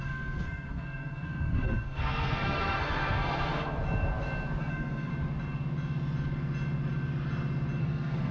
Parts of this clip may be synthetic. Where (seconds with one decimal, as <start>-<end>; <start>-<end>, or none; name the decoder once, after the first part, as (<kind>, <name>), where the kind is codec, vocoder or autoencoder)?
0.0-3.8 (codec, SNAC); 4.6-5.1; 7.8-8.3